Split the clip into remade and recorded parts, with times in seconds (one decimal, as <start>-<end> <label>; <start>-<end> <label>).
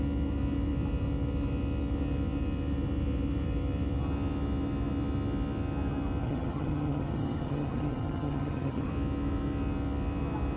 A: 0.0-6.2 recorded; 6.2-8.9 remade; 8.9-10.6 recorded